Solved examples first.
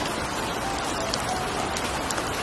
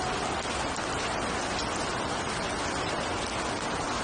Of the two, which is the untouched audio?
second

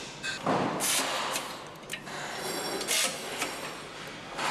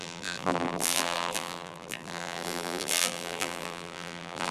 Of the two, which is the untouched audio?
first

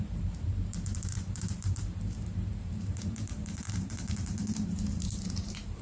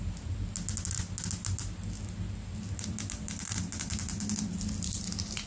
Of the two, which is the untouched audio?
second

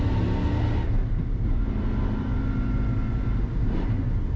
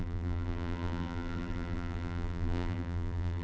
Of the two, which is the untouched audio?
first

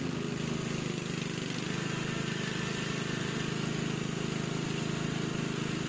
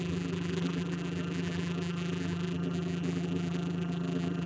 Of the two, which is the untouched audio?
first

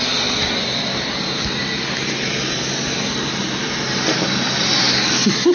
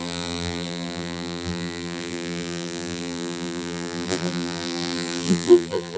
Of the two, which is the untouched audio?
first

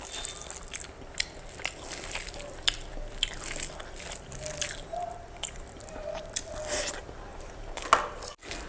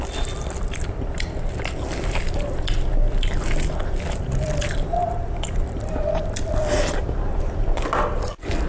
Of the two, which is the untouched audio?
first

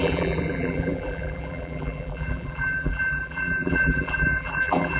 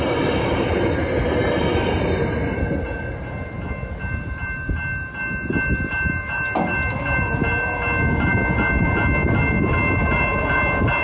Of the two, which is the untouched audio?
second